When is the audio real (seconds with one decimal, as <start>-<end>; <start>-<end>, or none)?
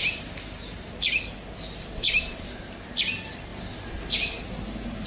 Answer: 0.0-5.1